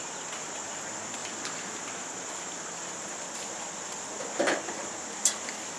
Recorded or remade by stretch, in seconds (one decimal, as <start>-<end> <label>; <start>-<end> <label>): 0.0-5.8 recorded